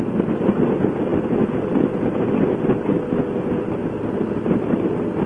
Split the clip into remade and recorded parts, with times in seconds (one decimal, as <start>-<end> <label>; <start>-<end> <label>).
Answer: 0.0-5.3 recorded